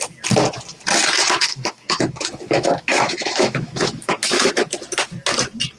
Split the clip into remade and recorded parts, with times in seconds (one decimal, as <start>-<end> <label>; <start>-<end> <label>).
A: 0.0-1.5 recorded; 1.5-4.5 remade; 4.5-5.8 recorded